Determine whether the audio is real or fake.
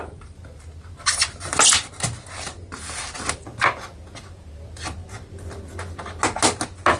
real